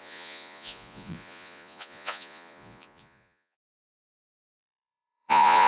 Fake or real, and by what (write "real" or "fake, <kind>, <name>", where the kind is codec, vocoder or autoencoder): fake, vocoder, Vocos